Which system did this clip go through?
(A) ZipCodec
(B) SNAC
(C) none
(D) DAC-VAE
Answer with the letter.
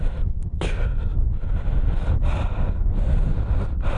C